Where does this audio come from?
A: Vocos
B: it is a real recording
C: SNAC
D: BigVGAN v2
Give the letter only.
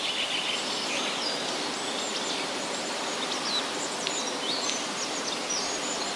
B